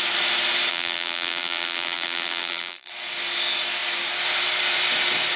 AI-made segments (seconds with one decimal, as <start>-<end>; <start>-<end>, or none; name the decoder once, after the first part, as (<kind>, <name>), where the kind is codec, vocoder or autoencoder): 0.7-2.9 (vocoder, BigVGAN v2)